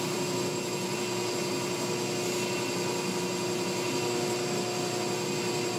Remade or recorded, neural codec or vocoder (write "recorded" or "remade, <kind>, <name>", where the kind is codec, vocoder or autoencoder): recorded